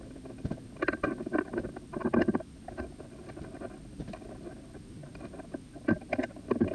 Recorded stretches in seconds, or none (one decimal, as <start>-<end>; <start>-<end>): 0.0-6.7